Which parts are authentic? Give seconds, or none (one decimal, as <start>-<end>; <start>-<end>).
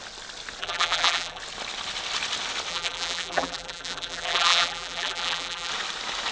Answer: 0.0-0.6; 1.4-2.7; 5.7-6.3